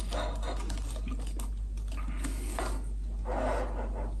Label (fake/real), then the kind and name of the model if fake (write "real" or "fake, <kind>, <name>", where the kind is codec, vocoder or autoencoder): real